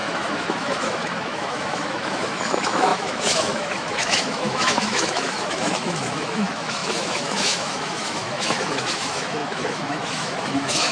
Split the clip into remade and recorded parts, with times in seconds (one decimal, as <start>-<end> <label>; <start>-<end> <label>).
0.0-10.9 remade